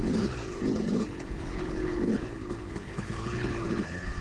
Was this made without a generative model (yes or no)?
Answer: no